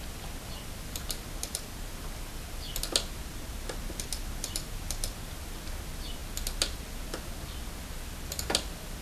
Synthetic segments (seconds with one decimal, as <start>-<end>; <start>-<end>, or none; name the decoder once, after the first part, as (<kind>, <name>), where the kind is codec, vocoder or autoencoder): none